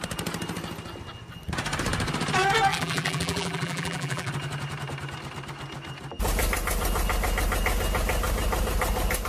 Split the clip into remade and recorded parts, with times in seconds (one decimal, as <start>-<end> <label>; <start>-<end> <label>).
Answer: 0.0-2.7 recorded; 2.7-4.3 remade; 4.3-9.3 recorded